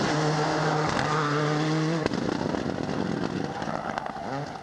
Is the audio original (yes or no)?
yes